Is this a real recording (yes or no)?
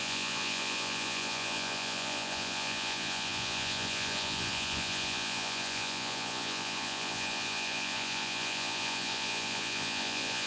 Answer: no